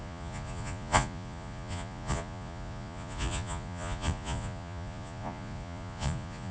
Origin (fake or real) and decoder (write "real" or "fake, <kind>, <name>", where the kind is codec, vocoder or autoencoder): fake, vocoder, Vocos